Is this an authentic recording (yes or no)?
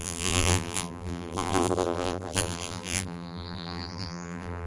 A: no